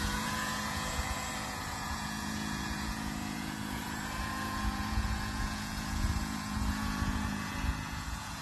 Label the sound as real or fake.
fake